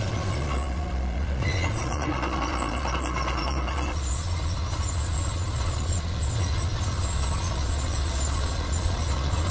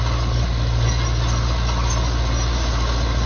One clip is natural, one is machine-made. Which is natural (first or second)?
second